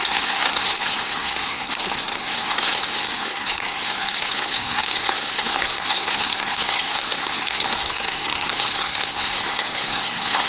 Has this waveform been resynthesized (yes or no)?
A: yes